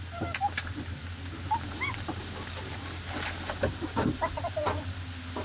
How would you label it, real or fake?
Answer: real